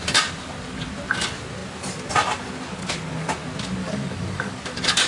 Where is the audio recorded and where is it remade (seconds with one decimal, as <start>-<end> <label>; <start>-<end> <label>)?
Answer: 0.0-3.8 recorded; 3.8-4.6 remade; 4.6-5.1 recorded